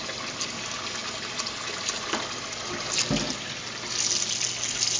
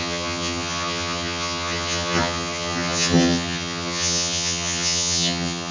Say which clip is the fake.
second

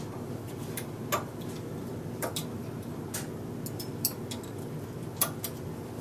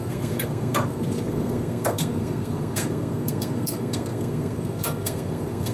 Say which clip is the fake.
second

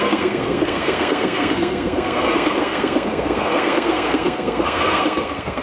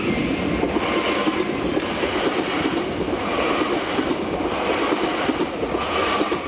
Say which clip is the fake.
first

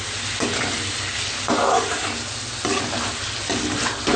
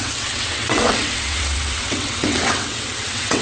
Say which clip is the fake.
second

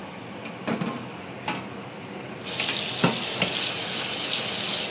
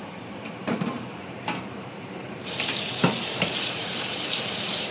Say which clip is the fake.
second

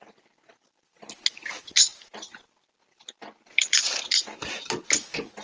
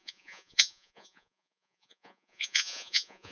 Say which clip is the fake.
second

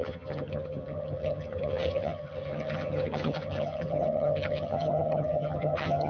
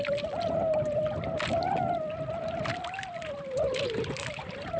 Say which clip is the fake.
first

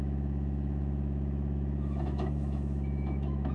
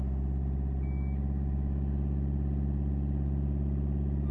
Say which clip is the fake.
first